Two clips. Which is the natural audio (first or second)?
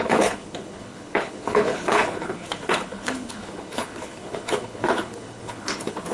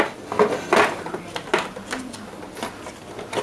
second